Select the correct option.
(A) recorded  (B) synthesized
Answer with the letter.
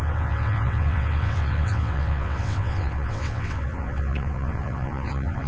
B